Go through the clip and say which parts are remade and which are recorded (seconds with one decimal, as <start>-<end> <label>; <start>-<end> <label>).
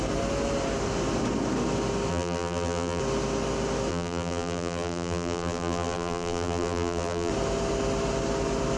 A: 0.0-2.1 recorded; 2.1-3.0 remade; 3.0-3.9 recorded; 3.9-7.3 remade; 7.3-8.8 recorded